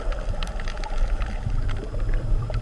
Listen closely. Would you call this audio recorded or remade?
recorded